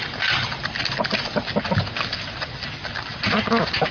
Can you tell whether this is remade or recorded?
recorded